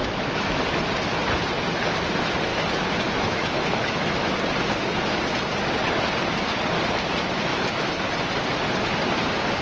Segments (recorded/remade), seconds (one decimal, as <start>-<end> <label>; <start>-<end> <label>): 0.0-0.6 remade; 0.6-2.5 recorded; 2.5-4.3 remade; 4.3-7.5 recorded; 7.5-8.0 remade; 8.0-9.6 recorded